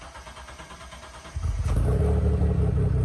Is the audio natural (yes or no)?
yes